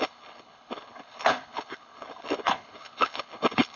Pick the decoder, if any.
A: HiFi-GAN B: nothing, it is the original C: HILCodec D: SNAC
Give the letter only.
C